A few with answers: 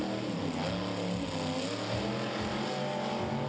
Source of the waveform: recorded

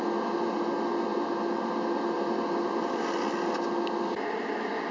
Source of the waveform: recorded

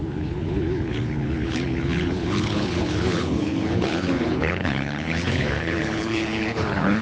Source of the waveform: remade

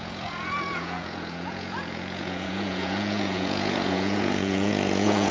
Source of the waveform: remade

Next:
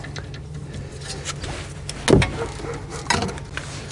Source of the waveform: recorded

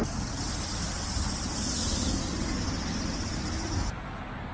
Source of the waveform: recorded